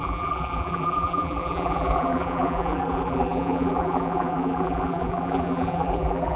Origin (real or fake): fake